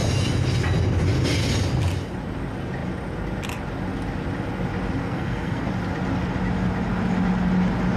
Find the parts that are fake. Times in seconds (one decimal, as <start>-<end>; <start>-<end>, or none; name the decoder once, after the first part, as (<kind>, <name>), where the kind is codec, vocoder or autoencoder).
5.0-5.7 (codec, SNAC)